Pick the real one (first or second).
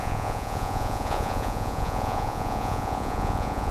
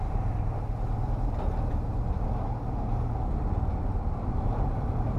second